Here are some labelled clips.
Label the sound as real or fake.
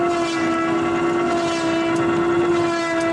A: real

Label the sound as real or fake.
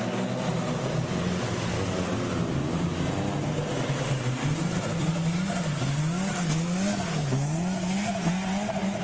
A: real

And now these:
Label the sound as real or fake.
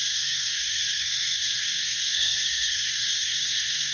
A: fake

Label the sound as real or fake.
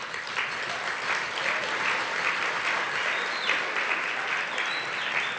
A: real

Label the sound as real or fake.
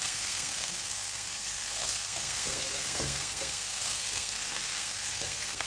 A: fake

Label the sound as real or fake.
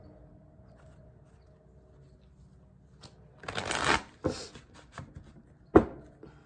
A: real